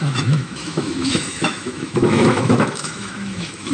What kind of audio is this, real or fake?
fake